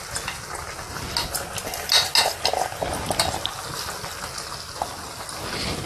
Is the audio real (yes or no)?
yes